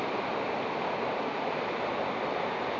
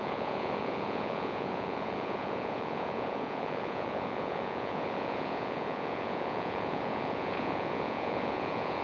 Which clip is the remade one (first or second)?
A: second